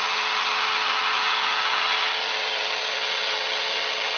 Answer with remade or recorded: remade